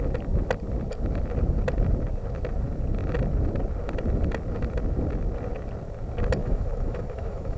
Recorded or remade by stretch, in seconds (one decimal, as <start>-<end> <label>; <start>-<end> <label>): 0.0-6.4 recorded; 6.4-7.6 remade